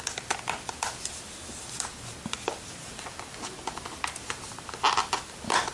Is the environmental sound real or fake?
real